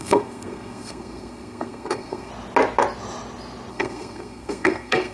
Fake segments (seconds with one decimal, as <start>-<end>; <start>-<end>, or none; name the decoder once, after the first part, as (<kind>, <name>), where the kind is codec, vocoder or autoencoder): 0.0-2.3 (codec, SNAC); 3.7-5.1